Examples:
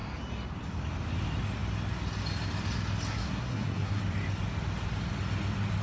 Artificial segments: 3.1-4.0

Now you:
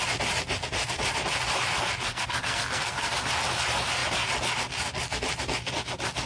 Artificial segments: 2.1-3.1

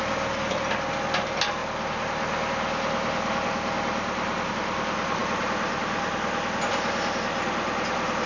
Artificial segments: none

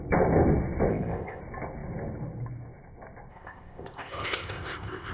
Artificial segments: 0.9-1.4; 3.3-5.1

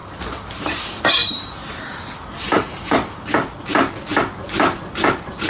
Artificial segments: 0.0-3.3

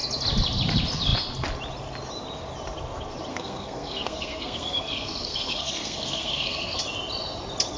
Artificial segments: 3.3-6.8